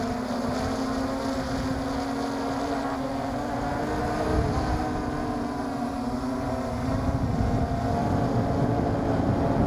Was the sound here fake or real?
real